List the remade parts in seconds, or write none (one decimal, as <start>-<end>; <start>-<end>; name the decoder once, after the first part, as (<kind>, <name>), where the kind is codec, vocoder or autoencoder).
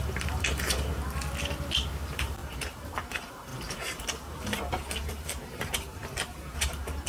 0.0-0.9 (vocoder, BigVGAN v2); 2.1-6.0; 6.6-7.1